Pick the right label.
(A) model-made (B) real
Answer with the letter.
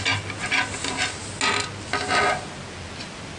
B